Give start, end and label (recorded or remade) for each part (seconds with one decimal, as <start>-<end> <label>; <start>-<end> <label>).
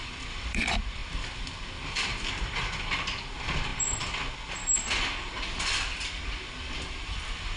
0.0-1.0 remade; 1.0-1.9 recorded; 1.9-3.7 remade; 3.7-7.6 recorded